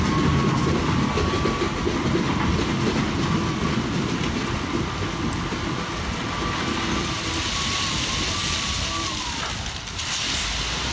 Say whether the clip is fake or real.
real